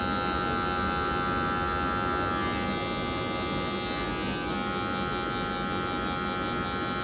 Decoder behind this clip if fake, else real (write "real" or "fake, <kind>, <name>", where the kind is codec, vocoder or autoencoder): real